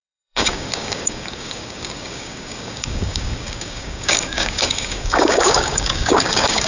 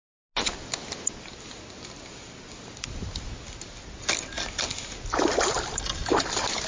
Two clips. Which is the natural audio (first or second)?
second